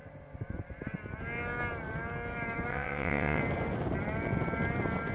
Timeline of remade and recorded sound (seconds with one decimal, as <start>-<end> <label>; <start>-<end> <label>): 0.0-2.7 recorded; 2.7-3.4 remade; 3.4-5.1 recorded